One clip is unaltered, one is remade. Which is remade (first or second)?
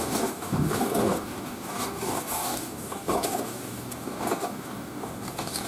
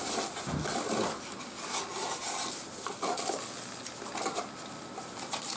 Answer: first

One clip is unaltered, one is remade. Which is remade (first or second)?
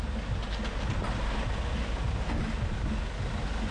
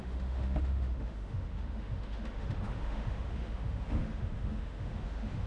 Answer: second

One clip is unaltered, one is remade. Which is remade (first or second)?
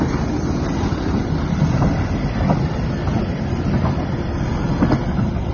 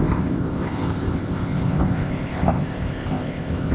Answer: second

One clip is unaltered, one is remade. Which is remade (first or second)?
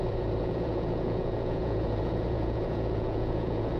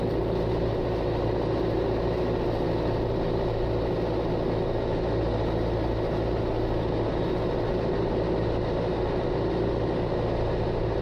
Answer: first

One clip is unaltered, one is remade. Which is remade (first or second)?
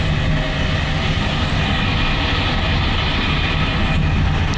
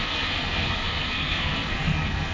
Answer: second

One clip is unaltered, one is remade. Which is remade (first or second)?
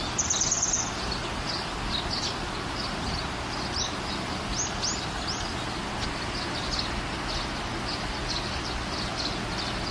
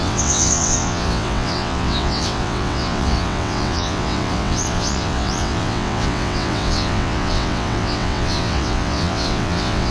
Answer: second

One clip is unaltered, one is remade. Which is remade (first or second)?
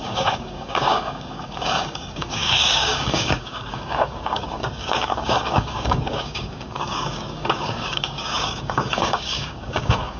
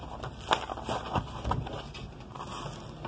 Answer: first